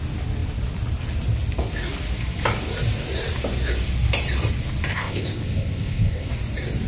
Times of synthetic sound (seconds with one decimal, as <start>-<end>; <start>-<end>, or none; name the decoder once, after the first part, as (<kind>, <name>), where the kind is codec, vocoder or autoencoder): 4.9-6.3 (codec, ZipCodec)